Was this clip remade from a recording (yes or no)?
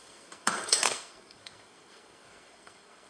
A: yes